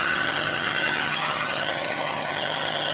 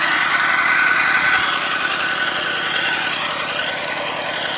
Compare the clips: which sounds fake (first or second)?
first